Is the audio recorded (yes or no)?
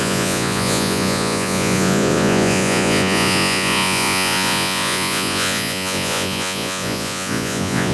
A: no